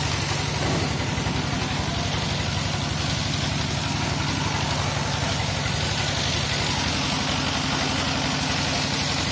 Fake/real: real